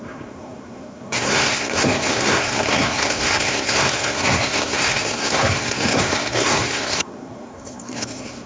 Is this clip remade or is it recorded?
remade